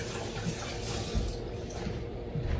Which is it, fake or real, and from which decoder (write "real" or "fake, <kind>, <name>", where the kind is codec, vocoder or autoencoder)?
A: real